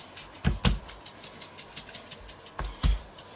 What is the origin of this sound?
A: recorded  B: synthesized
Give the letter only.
A